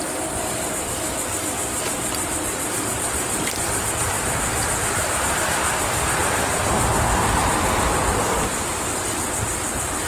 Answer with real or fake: fake